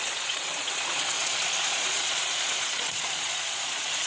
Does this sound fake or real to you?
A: fake